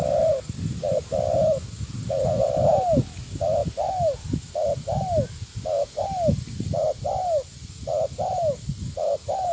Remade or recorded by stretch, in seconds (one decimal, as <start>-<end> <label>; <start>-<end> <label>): 0.0-9.5 recorded